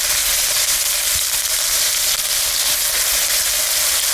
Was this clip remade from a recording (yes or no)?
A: no